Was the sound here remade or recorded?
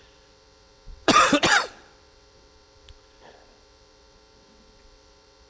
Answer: remade